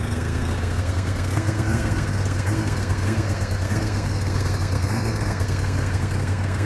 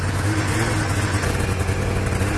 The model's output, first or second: first